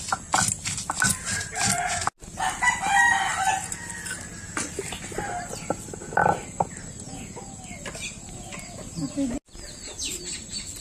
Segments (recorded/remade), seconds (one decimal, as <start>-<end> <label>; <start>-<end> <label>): 0.0-10.8 recorded